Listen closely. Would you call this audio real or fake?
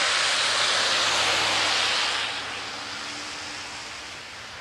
real